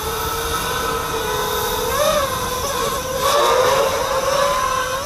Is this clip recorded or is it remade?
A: recorded